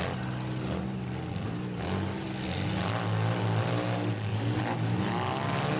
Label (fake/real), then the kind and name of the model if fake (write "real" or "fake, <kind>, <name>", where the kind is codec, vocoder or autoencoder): real